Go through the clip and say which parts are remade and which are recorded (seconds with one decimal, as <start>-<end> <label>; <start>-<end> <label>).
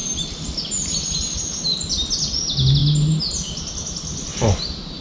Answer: 0.0-5.0 recorded